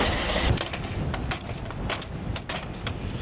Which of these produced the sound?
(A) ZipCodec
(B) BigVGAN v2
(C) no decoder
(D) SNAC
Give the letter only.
C